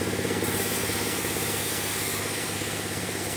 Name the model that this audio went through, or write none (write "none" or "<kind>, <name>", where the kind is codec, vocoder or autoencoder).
codec, SNAC